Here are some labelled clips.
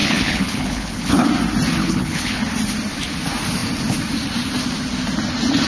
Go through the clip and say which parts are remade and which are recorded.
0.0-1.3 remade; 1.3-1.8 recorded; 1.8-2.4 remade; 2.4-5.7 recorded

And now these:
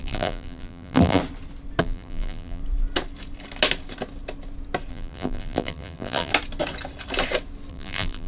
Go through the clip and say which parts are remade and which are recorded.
0.0-1.2 remade; 1.2-1.8 recorded; 1.8-2.6 remade; 2.6-4.9 recorded; 4.9-6.3 remade; 6.3-7.7 recorded; 7.7-8.3 remade

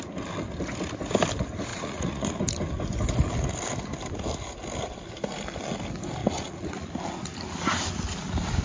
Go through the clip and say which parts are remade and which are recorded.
0.0-1.7 recorded; 1.7-2.4 remade; 2.4-6.2 recorded; 6.2-6.9 remade; 6.9-8.6 recorded

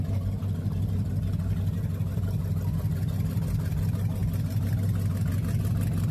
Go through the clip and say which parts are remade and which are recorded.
0.0-6.1 recorded

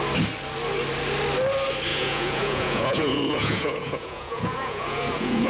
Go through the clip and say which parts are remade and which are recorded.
0.0-1.9 recorded; 1.9-5.5 remade